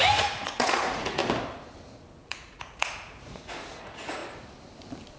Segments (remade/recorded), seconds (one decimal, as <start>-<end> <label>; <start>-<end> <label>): 0.0-1.2 remade; 1.2-2.2 recorded; 2.2-4.2 remade; 4.2-5.2 recorded